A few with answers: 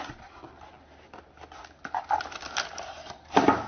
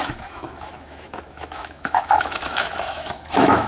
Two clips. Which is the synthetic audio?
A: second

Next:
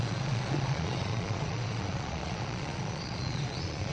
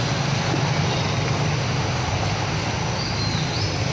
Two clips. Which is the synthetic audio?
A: first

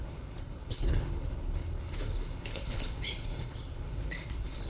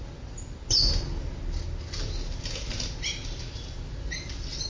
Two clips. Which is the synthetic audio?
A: first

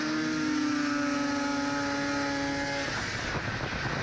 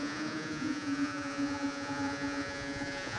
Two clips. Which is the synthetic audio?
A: second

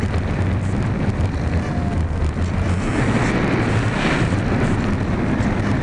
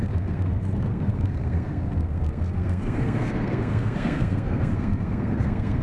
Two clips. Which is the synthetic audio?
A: second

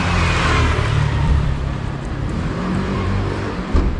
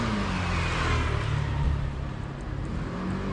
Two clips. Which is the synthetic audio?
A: first